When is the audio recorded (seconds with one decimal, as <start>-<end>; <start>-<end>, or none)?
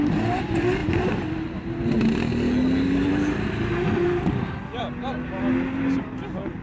0.0-6.6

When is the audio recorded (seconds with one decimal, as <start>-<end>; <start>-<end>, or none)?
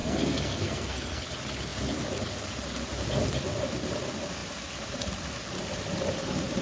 1.2-6.6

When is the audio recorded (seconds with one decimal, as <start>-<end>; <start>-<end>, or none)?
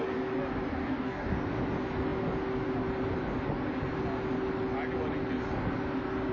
0.0-0.7; 1.5-6.3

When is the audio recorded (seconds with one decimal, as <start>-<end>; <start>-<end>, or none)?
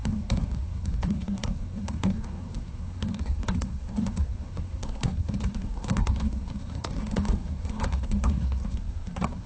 none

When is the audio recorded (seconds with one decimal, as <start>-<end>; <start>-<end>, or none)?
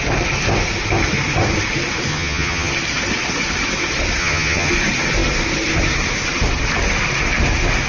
0.0-2.1; 2.7-4.2; 4.7-7.9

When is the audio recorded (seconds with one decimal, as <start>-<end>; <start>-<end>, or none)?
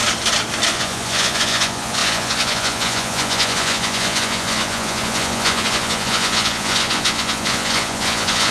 0.0-0.7